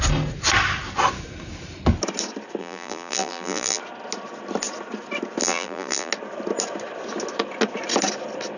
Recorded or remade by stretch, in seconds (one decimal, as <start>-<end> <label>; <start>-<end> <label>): 0.0-2.6 recorded; 2.6-3.8 remade; 3.8-5.4 recorded; 5.4-6.1 remade; 6.1-8.6 recorded